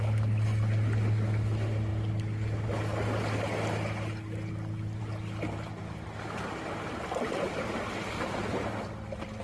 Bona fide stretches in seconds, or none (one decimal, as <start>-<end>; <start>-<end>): 0.0-9.4